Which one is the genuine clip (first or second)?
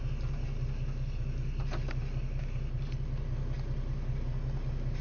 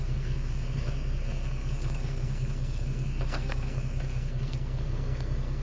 first